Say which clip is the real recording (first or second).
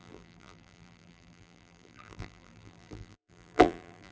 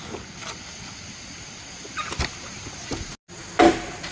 second